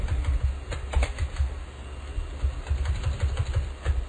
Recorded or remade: recorded